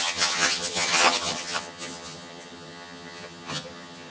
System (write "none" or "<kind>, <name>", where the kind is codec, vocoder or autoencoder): vocoder, HiFi-GAN